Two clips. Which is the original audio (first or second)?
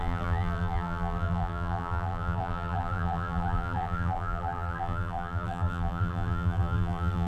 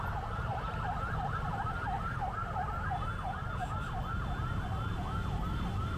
second